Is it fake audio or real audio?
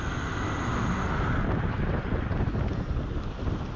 real